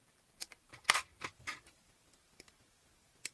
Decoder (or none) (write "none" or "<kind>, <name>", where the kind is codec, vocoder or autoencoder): vocoder, BigVGAN v2